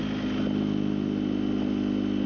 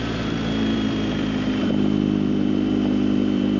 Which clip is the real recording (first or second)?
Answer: first